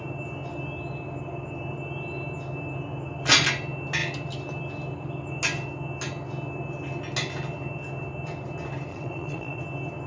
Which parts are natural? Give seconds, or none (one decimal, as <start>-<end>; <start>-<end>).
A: 0.0-8.9; 9.6-10.1